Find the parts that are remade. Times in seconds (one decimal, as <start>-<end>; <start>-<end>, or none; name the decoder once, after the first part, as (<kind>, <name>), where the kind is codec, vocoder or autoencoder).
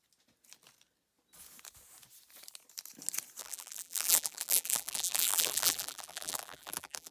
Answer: 3.4-7.1 (vocoder, BigVGAN v2)